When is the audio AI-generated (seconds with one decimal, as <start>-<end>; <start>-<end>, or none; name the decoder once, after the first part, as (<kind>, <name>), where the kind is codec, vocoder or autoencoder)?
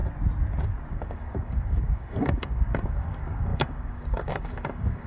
0.9-5.1 (codec, DAC)